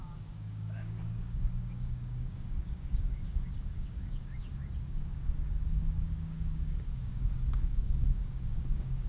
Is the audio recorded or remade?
remade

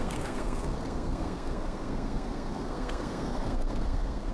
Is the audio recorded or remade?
remade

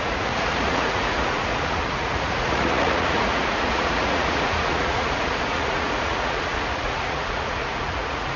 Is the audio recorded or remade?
remade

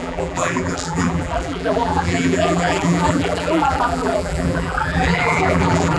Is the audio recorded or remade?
remade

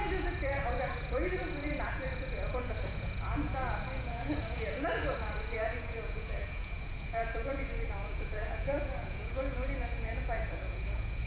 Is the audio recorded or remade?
remade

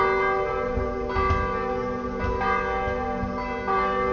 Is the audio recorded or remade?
recorded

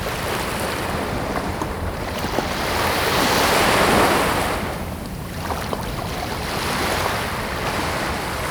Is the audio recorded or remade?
remade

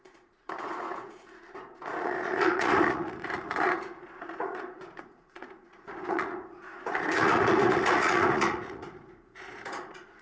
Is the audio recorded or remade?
remade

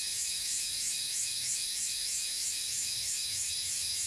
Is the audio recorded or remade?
remade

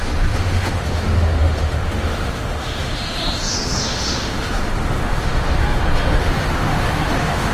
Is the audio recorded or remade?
remade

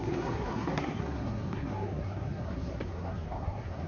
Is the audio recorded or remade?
remade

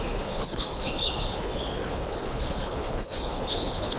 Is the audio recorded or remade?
remade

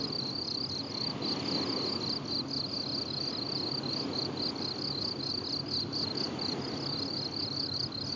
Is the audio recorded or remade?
recorded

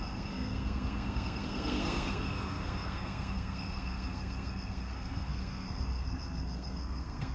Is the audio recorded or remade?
remade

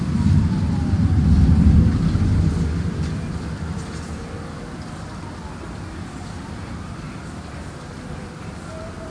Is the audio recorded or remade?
recorded